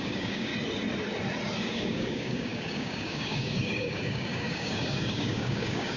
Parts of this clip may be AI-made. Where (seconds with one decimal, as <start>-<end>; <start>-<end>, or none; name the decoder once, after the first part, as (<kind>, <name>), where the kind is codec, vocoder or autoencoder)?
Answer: 0.0-0.5 (codec, DAC); 1.6-6.0